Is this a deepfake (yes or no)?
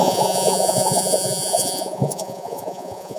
yes